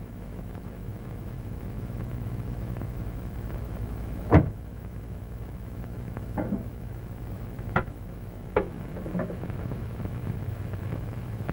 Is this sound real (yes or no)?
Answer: no